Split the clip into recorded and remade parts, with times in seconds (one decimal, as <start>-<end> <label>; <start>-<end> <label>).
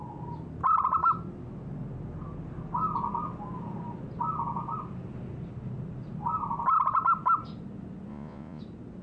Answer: 0.0-8.1 recorded; 8.1-8.6 remade; 8.6-9.0 recorded